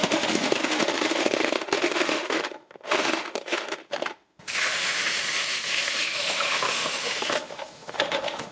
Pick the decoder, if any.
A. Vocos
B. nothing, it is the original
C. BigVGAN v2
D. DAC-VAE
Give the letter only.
D